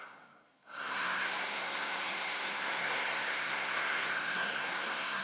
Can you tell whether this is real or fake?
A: fake